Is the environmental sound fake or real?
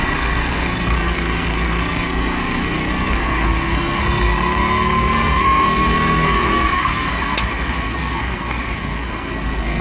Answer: fake